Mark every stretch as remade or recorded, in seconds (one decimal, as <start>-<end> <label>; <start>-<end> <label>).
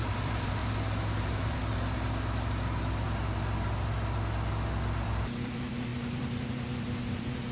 0.0-0.6 remade; 0.6-1.2 recorded; 1.2-1.6 remade; 1.6-5.0 recorded; 5.0-7.5 remade